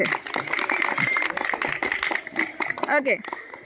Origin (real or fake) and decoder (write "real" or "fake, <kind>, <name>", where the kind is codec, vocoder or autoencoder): fake, vocoder, BigVGAN v2